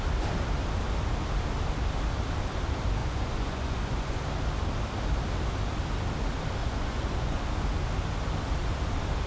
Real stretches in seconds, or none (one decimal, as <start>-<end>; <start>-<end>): 0.0-3.0; 4.2-6.6; 7.4-9.3